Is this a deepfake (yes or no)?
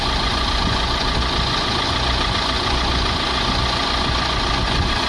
yes